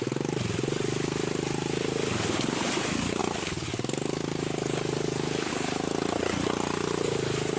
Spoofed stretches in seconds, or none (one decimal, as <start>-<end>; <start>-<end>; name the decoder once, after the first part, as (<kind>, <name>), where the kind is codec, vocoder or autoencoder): 3.2-5.5 (codec, DAC)